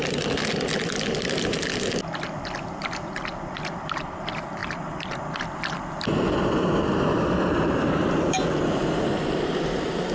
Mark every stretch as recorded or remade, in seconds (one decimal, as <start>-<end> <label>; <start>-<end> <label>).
0.0-10.1 recorded